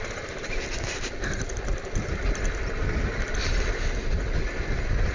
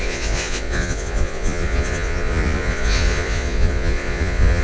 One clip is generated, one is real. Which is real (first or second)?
first